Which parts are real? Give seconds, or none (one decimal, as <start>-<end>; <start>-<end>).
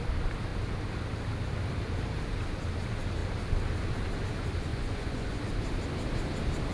0.0-4.7; 5.4-6.7